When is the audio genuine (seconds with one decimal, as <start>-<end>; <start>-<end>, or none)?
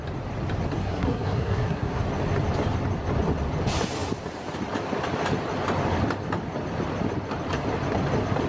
0.0-0.8; 2.0-8.5